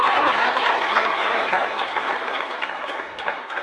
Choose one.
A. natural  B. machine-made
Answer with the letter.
B